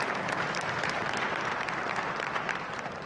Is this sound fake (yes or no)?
yes